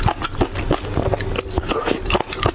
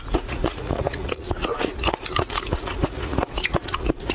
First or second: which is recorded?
first